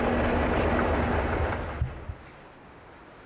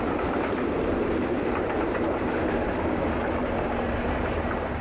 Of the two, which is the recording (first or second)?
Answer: first